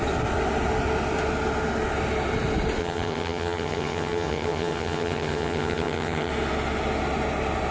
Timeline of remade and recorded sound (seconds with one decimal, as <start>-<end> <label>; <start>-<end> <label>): 0.0-2.8 recorded; 2.8-6.3 remade; 6.3-7.7 recorded